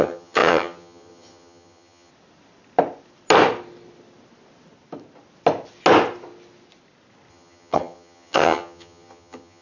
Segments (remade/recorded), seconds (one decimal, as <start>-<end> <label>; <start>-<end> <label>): 0.0-2.1 remade; 2.1-7.3 recorded; 7.3-9.6 remade